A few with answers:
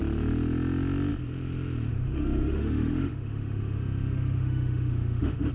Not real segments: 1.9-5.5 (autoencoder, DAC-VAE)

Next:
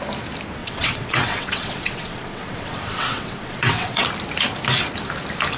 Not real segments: 0.6-4.0 (vocoder, WaveNeXt)

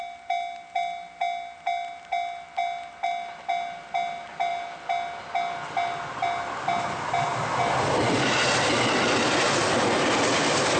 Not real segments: none

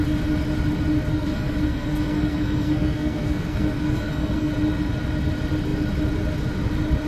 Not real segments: 1.1-4.5 (codec, SNAC)